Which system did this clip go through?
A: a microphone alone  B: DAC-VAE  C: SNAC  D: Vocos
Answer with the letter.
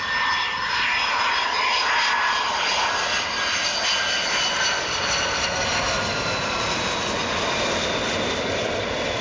A